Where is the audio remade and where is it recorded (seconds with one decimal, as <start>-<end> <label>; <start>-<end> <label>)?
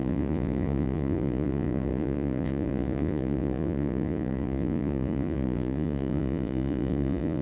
0.0-7.4 remade